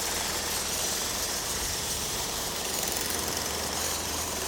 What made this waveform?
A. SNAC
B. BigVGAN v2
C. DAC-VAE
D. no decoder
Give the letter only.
B